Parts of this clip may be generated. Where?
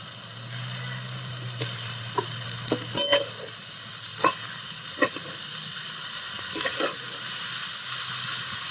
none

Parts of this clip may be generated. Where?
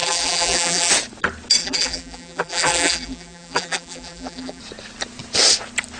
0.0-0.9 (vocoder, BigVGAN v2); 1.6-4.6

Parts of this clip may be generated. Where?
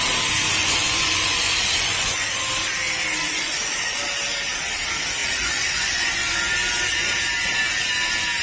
0.6-2.4 (vocoder, Vocos); 3.2-4.0; 5.2-6.4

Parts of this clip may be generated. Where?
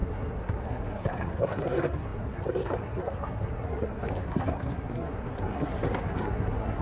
0.0-6.8 (codec, SNAC)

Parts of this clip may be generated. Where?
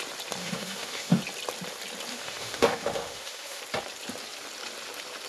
0.4-1.2 (autoencoder, DAC-VAE); 2.1-3.6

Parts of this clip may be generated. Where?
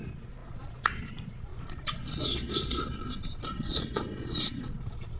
0.0-5.2 (vocoder, Vocos)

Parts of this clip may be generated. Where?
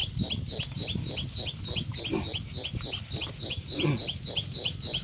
none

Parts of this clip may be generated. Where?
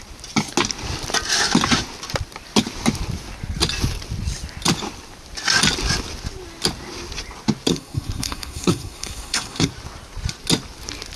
7.7-9.7 (codec, SNAC)